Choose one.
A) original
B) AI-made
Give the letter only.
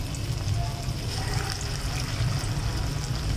A